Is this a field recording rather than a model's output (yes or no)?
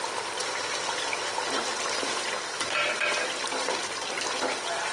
yes